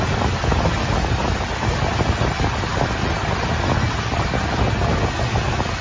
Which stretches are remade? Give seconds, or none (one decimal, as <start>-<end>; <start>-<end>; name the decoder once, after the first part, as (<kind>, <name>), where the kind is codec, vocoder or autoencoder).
none